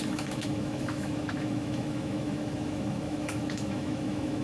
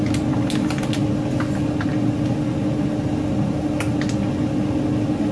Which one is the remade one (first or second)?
first